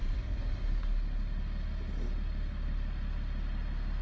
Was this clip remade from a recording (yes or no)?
no